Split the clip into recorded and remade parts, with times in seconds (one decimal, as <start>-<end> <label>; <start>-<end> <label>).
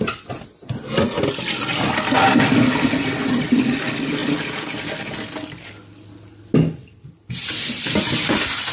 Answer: 0.0-8.7 recorded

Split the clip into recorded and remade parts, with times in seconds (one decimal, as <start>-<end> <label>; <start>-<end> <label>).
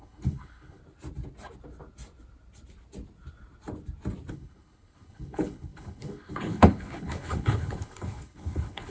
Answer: 0.0-0.8 remade; 0.8-4.3 recorded; 4.3-8.9 remade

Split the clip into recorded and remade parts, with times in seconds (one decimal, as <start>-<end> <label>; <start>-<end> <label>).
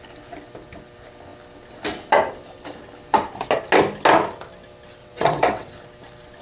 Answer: 0.0-5.0 recorded; 5.0-5.7 remade; 5.7-6.4 recorded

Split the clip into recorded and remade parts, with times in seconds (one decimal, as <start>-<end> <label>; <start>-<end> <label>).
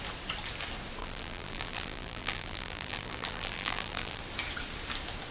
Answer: 0.0-1.0 recorded; 1.0-4.2 remade; 4.2-5.3 recorded